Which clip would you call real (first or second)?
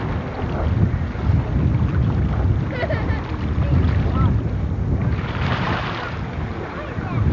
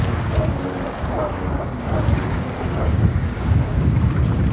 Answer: first